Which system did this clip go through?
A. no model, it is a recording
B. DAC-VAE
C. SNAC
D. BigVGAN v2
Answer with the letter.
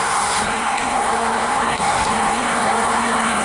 C